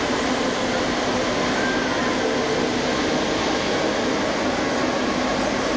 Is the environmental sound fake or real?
real